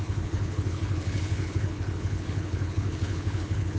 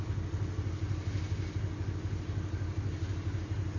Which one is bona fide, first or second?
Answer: second